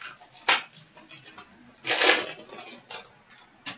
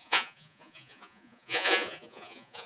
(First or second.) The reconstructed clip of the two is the second